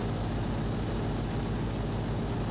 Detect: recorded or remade recorded